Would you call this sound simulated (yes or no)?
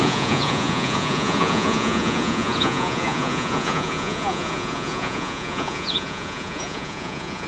yes